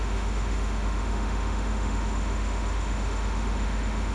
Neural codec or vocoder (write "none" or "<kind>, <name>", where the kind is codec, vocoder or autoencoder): autoencoder, DAC-VAE